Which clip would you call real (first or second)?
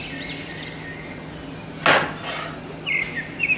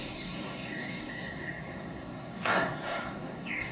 first